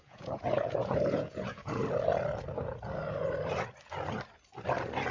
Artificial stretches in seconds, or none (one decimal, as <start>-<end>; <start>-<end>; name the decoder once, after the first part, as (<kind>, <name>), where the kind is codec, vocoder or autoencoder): 0.0-1.8 (vocoder, Vocos)